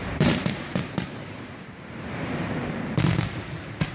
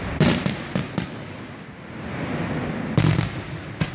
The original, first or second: second